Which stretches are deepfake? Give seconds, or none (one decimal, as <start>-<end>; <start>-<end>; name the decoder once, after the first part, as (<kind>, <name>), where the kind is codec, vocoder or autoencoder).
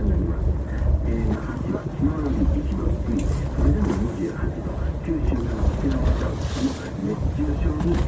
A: none